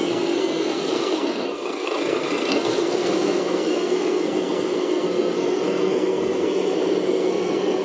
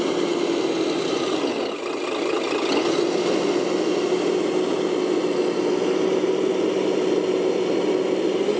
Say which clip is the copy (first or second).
first